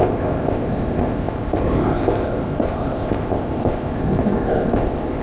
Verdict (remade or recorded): remade